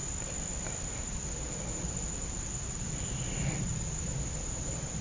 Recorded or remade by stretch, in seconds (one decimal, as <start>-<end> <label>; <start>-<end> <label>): 0.0-1.3 remade; 1.3-3.7 recorded; 3.7-5.0 remade